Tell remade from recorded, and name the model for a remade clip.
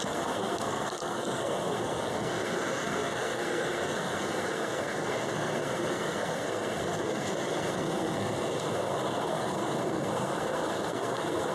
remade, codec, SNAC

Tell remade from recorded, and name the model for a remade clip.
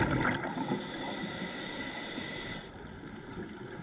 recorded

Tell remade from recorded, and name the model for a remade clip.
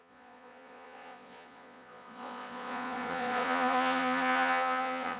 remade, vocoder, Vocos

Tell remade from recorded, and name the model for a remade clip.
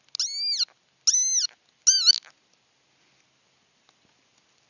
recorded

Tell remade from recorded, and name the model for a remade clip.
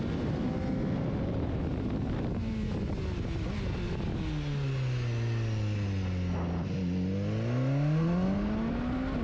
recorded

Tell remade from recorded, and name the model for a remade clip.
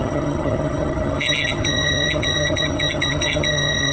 remade, vocoder, HiFi-GAN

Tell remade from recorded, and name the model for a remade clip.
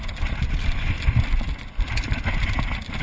recorded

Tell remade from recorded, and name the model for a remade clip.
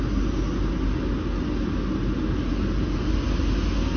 recorded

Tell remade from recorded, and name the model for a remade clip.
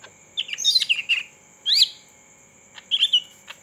recorded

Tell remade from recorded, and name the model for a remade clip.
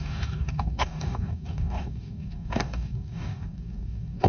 remade, codec, DAC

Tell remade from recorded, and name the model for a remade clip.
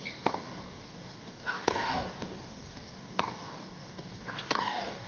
remade, codec, DAC